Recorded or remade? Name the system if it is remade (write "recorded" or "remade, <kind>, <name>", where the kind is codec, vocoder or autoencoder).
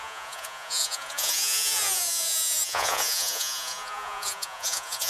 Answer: remade, vocoder, Vocos